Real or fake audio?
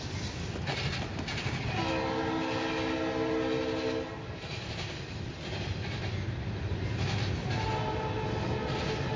real